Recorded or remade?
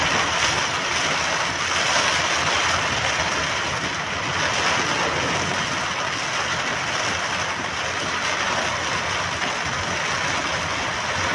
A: recorded